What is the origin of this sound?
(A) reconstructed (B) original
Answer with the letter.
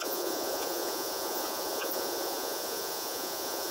A